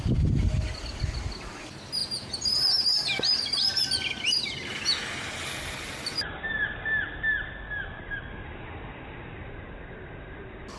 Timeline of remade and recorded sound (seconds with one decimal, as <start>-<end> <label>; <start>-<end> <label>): 0.0-10.8 recorded